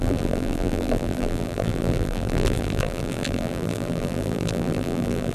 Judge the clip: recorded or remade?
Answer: remade